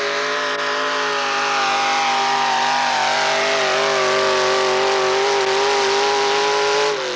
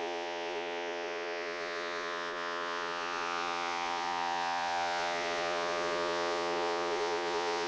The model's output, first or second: second